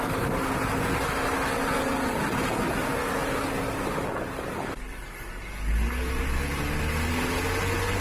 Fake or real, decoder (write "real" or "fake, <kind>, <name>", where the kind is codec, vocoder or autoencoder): real